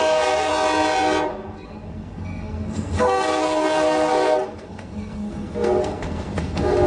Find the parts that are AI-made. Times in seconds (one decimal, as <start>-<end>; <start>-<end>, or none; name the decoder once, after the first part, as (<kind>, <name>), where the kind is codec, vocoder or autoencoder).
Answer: 0.0-0.5 (codec, SNAC); 1.3-6.9